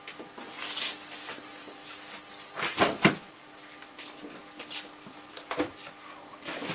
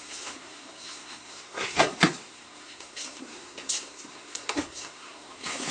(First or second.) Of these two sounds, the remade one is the second